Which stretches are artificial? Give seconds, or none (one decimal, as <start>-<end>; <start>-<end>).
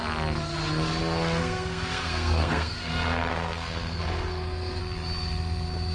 1.4-2.9; 3.3-4.8